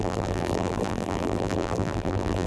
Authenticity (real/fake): fake